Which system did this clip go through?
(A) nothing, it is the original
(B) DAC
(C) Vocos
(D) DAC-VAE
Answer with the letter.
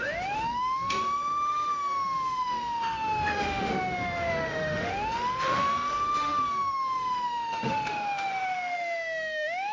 D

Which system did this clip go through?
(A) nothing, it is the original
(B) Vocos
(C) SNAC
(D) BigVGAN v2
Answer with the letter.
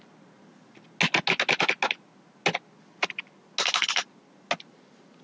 A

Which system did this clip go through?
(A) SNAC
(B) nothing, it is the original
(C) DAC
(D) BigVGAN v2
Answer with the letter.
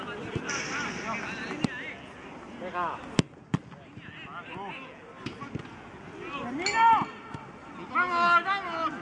B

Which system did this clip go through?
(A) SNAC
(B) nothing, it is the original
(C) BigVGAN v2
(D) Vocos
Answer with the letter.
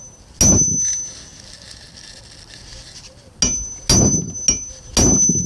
B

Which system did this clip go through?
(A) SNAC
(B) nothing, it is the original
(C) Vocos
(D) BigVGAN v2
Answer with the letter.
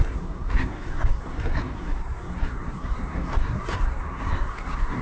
A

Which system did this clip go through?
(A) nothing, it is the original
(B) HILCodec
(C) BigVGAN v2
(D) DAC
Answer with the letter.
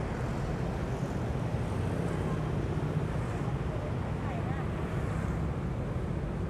A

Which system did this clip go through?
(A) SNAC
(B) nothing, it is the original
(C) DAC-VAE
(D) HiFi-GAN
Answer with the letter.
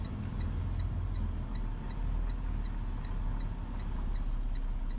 B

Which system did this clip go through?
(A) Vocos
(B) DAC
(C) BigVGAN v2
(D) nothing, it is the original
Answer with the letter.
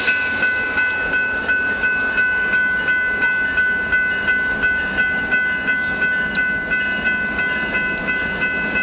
D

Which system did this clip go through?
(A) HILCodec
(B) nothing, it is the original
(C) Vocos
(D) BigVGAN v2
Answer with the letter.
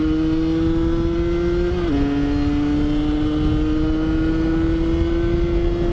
B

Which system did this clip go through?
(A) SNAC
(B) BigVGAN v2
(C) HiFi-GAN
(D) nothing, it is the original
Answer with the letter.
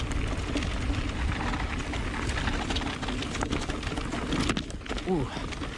D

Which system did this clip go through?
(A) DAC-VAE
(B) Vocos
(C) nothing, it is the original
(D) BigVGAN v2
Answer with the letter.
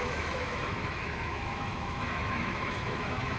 A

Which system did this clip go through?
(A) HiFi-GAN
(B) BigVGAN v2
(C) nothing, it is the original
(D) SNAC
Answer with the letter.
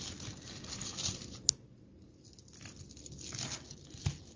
C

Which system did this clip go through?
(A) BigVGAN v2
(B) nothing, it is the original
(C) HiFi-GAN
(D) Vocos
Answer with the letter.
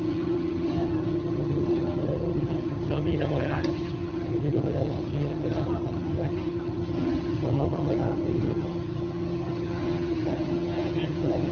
C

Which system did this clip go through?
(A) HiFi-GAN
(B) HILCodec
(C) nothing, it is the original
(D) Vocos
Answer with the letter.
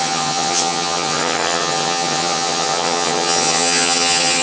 A